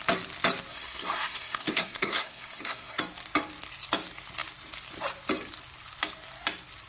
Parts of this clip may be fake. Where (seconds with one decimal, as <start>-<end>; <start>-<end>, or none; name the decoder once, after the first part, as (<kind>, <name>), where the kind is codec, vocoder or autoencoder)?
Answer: 0.7-3.0 (codec, SNAC)